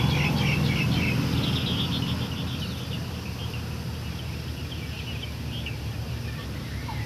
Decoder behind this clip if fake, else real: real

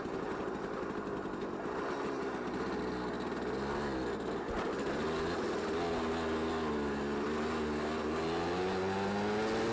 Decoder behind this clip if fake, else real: real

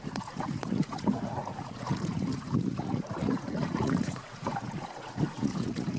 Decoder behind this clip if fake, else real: fake, vocoder, Vocos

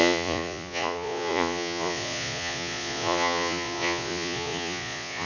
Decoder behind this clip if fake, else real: fake, vocoder, Vocos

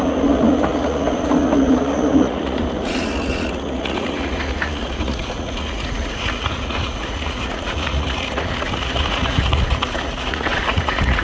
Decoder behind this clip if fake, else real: fake, vocoder, Vocos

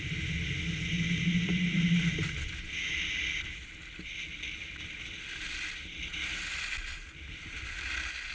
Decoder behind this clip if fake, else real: real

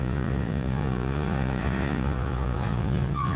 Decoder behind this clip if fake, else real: fake, vocoder, Vocos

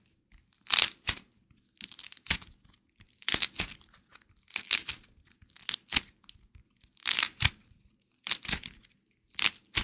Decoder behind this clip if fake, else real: real